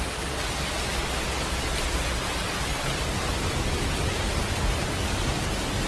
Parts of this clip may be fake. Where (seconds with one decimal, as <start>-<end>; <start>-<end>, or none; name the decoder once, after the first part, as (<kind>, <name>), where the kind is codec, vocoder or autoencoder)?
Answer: none

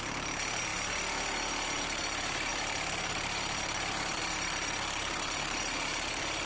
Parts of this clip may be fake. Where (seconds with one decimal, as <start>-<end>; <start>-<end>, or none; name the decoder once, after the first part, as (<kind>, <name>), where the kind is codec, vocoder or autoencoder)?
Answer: 2.5-4.2 (vocoder, BigVGAN v2)

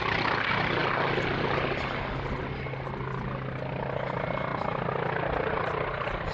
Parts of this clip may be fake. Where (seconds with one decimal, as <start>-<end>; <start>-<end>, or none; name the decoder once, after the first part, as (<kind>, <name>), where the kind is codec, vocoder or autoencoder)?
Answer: none

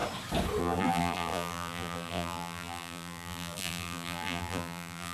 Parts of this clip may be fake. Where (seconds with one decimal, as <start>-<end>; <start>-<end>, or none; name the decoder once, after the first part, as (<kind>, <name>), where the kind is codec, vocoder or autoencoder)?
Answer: 0.6-5.1 (vocoder, BigVGAN v2)

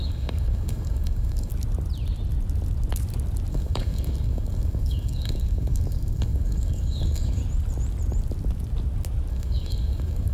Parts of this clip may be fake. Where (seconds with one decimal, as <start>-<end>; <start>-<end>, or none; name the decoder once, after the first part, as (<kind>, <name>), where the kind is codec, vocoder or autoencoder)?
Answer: 0.0-1.5 (codec, DAC); 3.5-7.4; 9.3-10.3